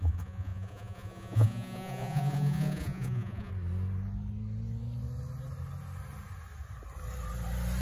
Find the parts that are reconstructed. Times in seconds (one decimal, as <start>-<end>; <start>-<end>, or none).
0.0-3.5